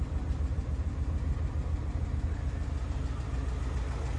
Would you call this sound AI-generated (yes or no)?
no